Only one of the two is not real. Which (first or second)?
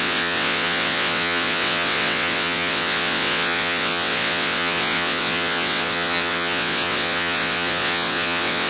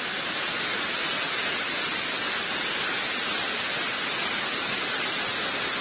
first